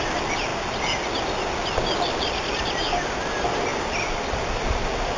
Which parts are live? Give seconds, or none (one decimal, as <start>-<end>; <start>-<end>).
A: 0.0-5.2